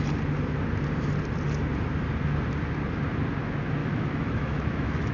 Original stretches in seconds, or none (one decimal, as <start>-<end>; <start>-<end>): 0.0-3.8